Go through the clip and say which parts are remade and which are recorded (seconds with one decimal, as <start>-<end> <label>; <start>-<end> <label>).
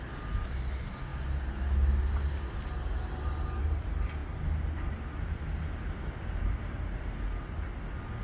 0.0-8.2 recorded